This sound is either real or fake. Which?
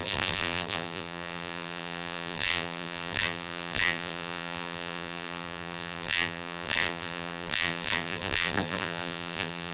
fake